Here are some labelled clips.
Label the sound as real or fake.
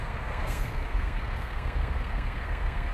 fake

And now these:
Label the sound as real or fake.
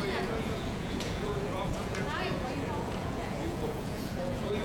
fake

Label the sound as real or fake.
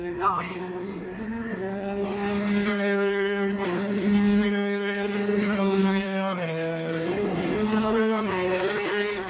fake